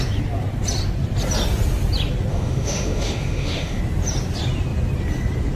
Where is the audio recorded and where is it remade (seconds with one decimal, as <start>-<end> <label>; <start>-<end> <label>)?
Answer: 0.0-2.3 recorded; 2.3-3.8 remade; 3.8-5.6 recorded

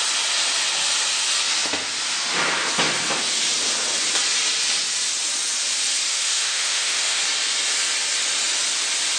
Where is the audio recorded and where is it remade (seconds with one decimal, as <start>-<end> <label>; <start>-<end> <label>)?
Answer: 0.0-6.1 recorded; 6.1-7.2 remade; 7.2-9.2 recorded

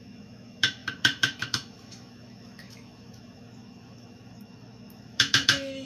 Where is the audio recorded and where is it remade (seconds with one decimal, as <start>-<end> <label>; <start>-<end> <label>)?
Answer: 0.0-5.9 remade

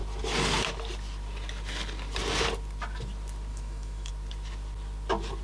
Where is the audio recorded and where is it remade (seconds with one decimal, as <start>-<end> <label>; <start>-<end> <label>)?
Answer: 0.0-3.5 recorded; 3.5-4.1 remade; 4.1-5.4 recorded